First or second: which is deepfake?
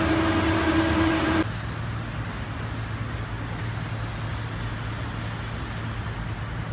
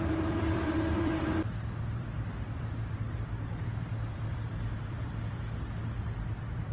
second